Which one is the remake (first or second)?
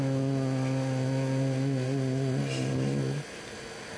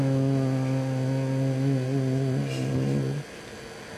first